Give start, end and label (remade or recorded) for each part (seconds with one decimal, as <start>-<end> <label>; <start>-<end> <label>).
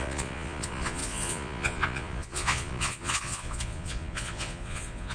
0.0-5.1 remade